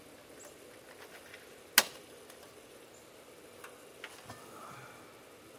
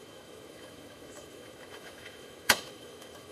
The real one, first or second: first